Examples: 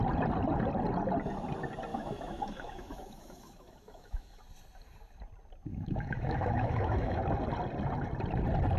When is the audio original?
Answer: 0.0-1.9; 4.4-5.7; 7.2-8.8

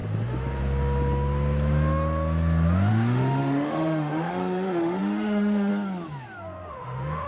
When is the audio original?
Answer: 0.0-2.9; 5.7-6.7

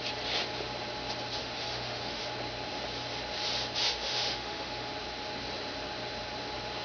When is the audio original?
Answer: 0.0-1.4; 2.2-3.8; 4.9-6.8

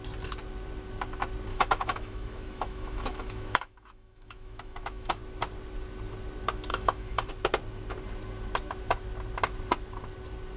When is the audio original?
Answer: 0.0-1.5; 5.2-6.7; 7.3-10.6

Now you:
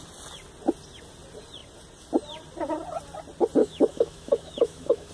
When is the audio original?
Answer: 0.0-3.6

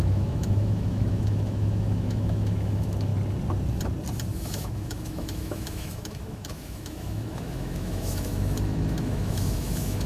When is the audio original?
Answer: 3.1-4.3

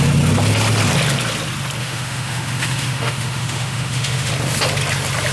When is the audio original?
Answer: 0.0-1.8; 4.3-5.3

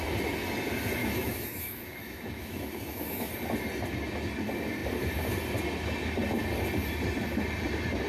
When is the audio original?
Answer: 0.0-1.0; 3.3-8.1